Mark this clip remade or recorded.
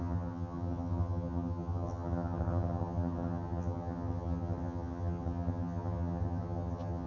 remade